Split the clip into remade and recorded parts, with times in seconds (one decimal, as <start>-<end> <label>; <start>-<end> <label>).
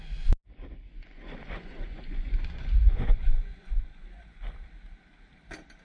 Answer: 0.0-0.9 recorded; 0.9-4.4 remade; 4.4-5.8 recorded